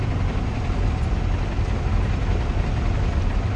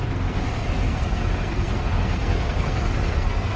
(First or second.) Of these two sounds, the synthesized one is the second